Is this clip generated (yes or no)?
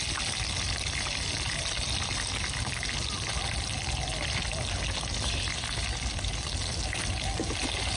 no